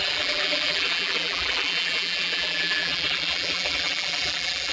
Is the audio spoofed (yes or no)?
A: yes